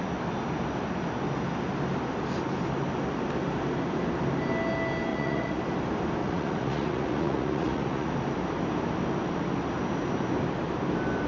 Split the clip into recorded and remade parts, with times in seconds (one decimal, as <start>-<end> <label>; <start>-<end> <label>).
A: 0.0-5.1 recorded; 5.1-5.6 remade; 5.6-6.2 recorded; 6.2-8.1 remade; 8.1-11.3 recorded